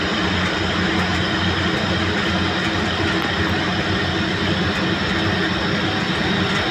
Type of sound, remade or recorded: recorded